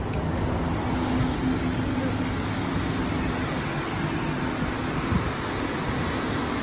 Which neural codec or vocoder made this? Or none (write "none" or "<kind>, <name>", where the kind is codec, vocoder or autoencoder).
none